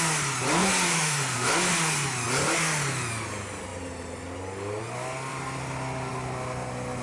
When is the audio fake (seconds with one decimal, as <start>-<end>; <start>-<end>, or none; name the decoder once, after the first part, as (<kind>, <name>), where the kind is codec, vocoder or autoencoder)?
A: 0.9-1.5 (autoencoder, DAC-VAE)